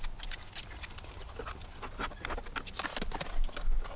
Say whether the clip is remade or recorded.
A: recorded